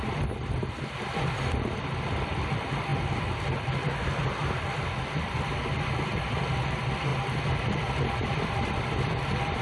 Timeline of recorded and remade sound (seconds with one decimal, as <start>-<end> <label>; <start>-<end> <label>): 0.0-9.6 recorded